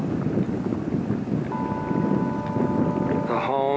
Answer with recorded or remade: recorded